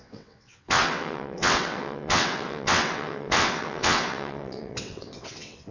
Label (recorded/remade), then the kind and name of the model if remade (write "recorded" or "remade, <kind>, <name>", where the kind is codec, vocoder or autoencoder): remade, vocoder, WaveNeXt